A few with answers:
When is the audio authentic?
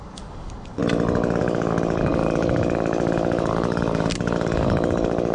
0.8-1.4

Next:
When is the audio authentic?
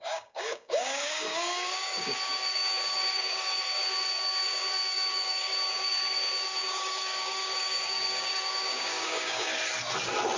9.5-10.4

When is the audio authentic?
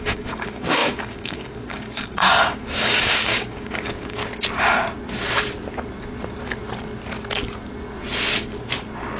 4.2-9.2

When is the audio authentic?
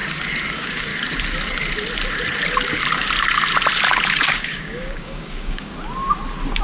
0.0-0.5; 0.9-4.2; 5.7-6.6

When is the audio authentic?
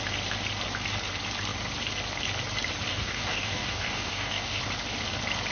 0.0-2.9; 4.6-5.5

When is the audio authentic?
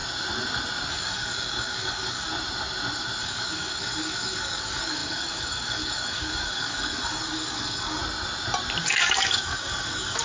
0.0-0.9; 2.3-3.2; 8.0-8.8